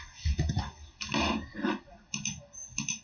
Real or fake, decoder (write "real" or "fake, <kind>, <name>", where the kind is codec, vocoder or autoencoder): real